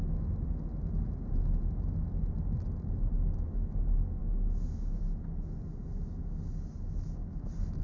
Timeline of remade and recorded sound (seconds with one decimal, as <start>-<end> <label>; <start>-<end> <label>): 0.0-4.2 recorded; 4.2-5.0 remade; 5.0-7.8 recorded